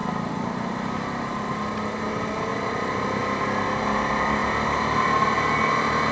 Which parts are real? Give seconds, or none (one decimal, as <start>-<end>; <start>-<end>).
0.0-6.1